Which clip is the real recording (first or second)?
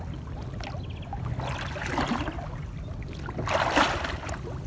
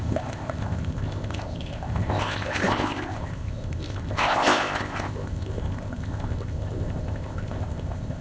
first